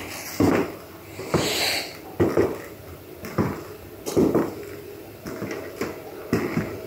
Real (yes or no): yes